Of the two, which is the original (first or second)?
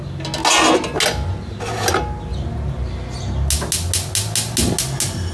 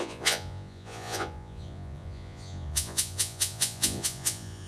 first